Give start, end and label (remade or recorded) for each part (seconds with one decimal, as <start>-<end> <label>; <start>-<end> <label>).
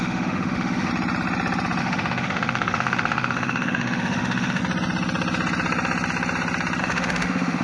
0.0-0.9 remade; 0.9-1.8 recorded; 1.8-4.6 remade; 4.6-6.8 recorded; 6.8-7.6 remade